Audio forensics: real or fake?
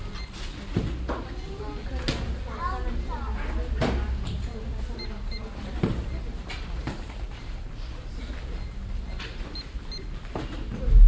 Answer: real